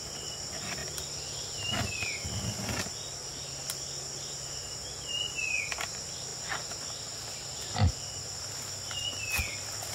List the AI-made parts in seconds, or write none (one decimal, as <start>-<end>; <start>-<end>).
none